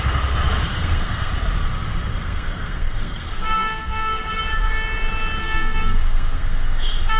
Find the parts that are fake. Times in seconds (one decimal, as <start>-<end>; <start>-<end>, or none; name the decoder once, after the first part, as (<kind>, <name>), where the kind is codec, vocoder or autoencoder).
0.7-1.3 (codec, SNAC); 2.1-4.4; 5.4-7.2